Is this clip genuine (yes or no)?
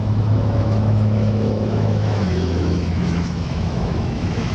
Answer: no